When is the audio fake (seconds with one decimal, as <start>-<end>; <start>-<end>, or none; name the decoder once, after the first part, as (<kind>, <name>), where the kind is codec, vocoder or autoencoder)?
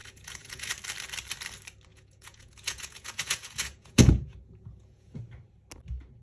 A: 0.0-0.7 (vocoder, Vocos); 1.9-5.2